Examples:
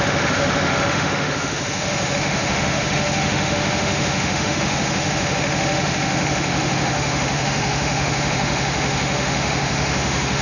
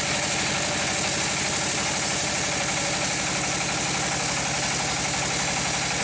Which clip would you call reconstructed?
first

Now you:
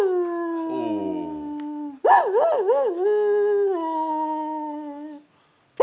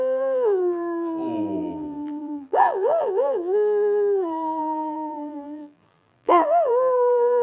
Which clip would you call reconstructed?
second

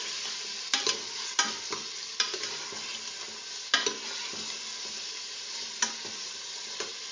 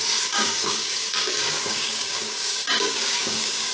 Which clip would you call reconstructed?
second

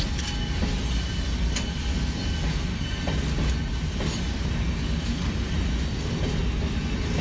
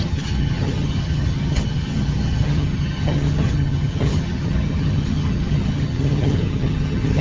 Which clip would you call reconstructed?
second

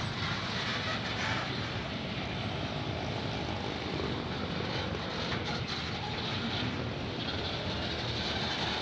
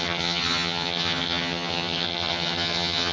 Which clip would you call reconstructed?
second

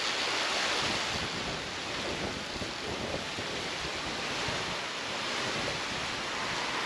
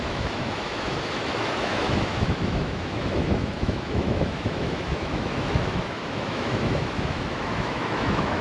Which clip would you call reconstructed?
second